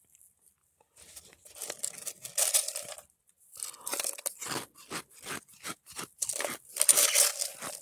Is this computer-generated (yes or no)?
no